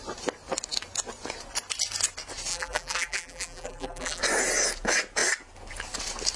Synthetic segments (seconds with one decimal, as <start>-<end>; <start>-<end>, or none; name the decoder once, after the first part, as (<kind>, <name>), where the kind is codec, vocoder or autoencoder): 2.5-4.2 (vocoder, BigVGAN v2)